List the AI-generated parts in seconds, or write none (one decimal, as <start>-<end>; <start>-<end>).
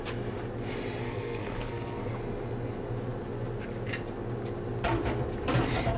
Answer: 1.0-2.1